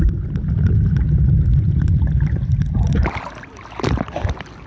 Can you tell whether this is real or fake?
real